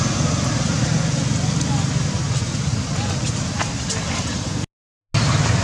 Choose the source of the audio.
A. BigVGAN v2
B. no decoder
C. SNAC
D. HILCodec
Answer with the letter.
B